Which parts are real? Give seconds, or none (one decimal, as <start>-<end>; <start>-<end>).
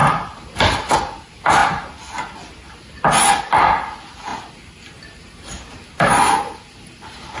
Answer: 0.0-7.4